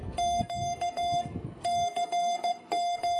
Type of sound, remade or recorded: remade